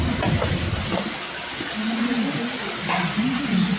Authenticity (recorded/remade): recorded